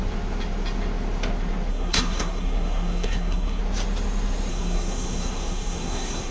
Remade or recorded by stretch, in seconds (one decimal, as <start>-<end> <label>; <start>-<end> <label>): 0.0-1.7 recorded; 1.7-3.6 remade; 3.6-4.5 recorded; 4.5-6.3 remade